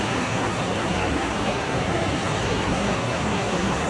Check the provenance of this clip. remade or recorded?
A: remade